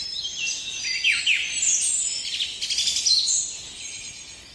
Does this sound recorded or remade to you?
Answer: recorded